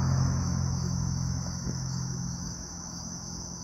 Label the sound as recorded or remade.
remade